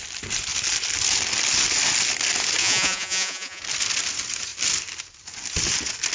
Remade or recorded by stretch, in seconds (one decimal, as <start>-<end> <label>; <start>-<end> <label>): 0.0-2.6 recorded; 2.6-3.6 remade; 3.6-6.1 recorded